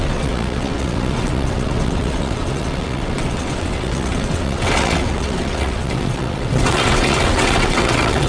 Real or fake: fake